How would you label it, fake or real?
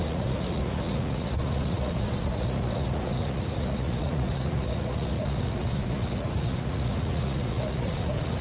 fake